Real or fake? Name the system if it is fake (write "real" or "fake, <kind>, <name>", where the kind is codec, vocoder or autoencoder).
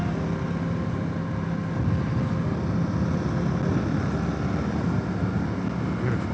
real